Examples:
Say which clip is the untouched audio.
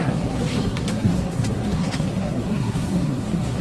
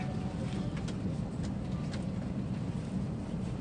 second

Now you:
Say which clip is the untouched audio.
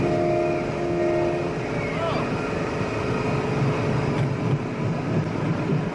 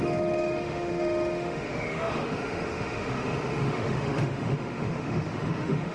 first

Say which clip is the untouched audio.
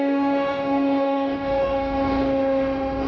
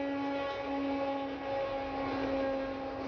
second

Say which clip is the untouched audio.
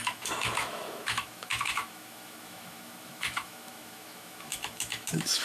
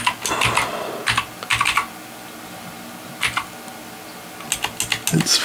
second